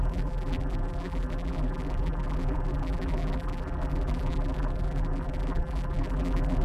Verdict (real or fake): fake